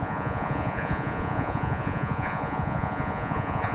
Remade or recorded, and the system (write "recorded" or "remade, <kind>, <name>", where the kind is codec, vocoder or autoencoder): remade, vocoder, Vocos